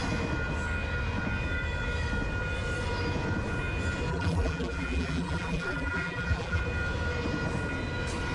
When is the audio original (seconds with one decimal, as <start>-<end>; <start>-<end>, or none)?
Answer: 0.0-4.1; 6.6-8.3